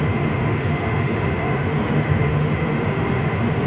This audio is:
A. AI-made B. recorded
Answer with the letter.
A